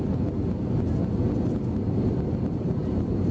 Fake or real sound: real